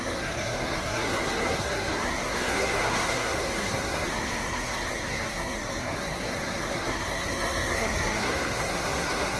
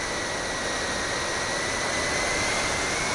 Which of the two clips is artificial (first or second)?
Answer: first